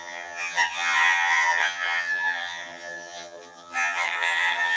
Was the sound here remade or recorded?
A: remade